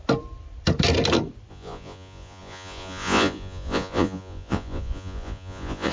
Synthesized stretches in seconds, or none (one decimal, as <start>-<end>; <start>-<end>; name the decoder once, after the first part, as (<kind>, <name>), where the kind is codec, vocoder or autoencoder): 1.5-5.9 (vocoder, Vocos)